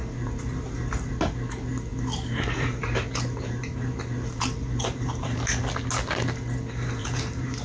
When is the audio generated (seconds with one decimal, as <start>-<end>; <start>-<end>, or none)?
0.0-1.1; 1.9-5.4; 7.0-7.6